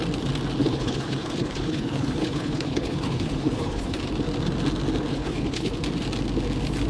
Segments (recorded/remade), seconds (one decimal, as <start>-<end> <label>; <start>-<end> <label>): 0.0-0.6 recorded; 0.6-4.0 remade; 4.0-5.1 recorded; 5.1-5.7 remade; 5.7-6.9 recorded